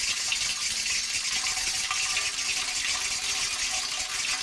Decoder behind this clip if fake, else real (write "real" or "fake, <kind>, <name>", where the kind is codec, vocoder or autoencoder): real